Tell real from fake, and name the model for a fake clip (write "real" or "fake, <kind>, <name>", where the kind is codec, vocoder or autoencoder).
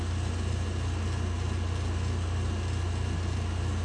real